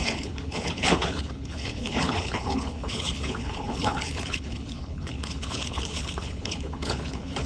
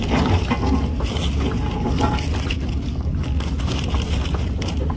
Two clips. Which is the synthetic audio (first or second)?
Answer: first